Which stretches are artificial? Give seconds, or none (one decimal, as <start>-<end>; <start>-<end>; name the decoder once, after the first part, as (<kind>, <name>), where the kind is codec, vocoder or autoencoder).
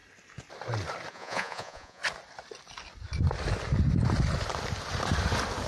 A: 1.1-2.0 (vocoder, Vocos)